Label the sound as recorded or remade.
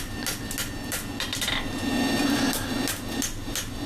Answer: recorded